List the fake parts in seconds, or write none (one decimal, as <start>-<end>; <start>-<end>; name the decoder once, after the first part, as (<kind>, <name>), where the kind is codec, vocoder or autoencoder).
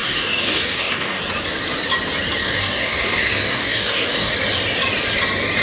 0.0-1.2 (codec, DAC); 2.4-4.3